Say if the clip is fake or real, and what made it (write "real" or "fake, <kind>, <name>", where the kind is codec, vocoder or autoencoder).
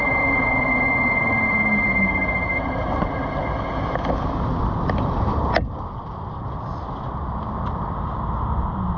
real